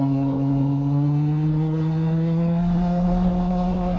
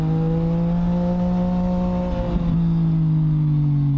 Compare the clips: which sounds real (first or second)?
second